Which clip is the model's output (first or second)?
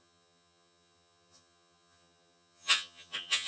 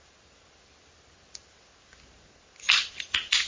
first